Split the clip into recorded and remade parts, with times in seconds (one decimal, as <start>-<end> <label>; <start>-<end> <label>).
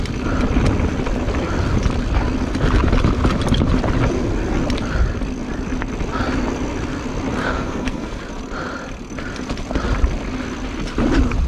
0.0-7.4 recorded; 7.4-8.2 remade; 8.2-11.5 recorded